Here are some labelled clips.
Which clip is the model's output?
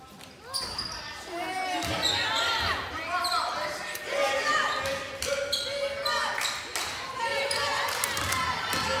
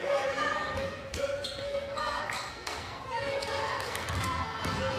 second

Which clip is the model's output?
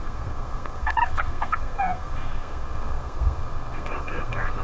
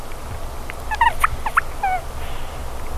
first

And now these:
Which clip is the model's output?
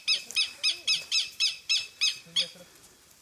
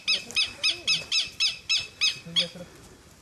first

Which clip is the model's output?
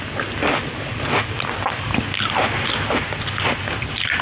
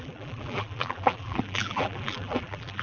second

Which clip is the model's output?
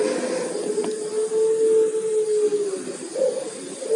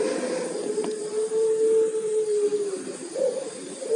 second